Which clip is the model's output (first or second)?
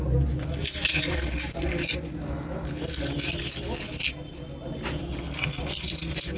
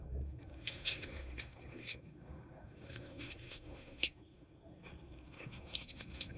second